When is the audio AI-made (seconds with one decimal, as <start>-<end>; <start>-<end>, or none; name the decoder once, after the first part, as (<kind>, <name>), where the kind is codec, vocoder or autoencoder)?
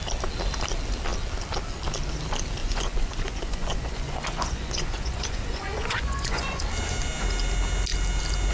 2.6-6.6 (vocoder, Vocos)